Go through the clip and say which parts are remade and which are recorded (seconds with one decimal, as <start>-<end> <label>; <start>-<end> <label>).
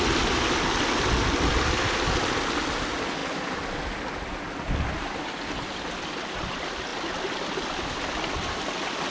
0.0-3.2 recorded; 3.2-6.1 remade; 6.1-9.1 recorded